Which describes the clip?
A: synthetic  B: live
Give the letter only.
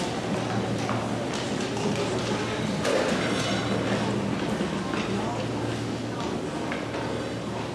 B